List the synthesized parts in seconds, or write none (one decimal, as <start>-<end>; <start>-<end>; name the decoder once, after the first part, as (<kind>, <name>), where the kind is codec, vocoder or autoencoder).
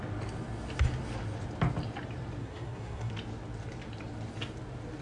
2.4-3.1 (codec, SNAC)